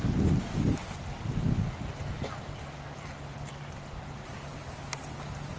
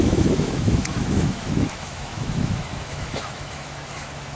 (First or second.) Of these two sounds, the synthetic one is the second